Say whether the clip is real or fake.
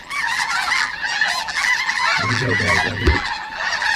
fake